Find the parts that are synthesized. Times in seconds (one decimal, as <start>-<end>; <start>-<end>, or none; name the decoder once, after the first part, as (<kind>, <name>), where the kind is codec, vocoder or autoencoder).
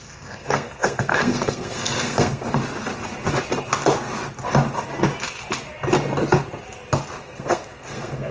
0.0-2.6 (codec, SNAC); 7.2-8.3